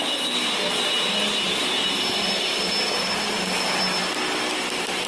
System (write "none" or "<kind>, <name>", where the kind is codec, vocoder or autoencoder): none